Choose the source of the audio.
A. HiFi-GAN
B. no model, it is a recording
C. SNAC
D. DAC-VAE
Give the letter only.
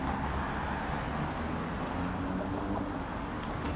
B